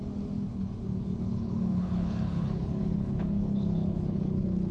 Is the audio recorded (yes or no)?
no